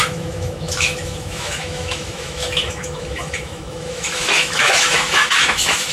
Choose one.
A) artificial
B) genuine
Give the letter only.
A